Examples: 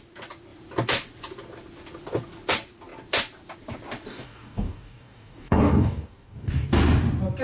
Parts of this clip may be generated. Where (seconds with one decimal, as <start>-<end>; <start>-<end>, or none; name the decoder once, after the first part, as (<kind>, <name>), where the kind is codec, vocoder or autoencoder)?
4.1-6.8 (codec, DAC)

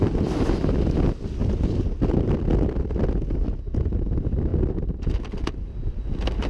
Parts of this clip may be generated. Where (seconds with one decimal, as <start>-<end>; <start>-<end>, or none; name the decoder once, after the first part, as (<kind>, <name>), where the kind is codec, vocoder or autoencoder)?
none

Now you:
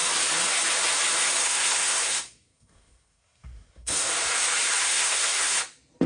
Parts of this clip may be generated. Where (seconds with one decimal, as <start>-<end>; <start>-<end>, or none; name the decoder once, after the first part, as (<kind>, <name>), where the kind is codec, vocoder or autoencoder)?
1.4-4.1 (codec, SNAC); 4.8-5.6

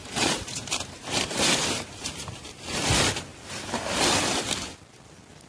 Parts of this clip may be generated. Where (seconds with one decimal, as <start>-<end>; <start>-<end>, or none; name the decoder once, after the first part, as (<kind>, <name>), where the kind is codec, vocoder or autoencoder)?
0.0-2.1 (vocoder, BigVGAN v2)

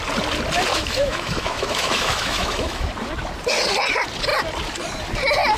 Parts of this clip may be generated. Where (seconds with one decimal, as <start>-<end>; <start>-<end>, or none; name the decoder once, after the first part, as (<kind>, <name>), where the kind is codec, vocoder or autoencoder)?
0.7-2.9 (autoencoder, DAC-VAE)

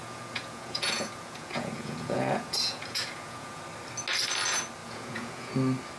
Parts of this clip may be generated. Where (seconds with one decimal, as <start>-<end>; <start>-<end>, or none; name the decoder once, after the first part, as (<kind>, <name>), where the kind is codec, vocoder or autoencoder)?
0.0-3.6 (vocoder, Vocos); 4.8-5.5

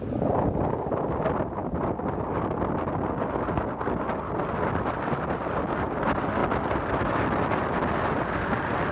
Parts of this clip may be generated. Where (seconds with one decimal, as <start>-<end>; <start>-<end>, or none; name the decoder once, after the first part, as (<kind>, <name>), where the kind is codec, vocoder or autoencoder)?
none